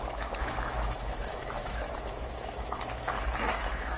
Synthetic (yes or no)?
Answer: yes